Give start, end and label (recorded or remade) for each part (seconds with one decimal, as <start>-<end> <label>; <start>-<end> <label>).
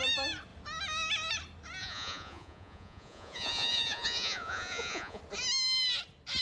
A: 0.0-1.8 recorded; 1.8-5.2 remade; 5.2-6.4 recorded